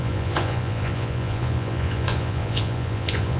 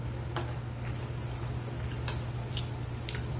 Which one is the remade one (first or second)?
first